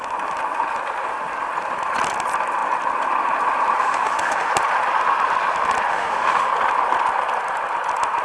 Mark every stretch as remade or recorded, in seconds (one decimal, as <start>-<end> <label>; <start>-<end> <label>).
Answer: 0.0-3.8 recorded; 3.8-4.5 remade; 4.5-5.9 recorded; 5.9-6.5 remade; 6.5-8.2 recorded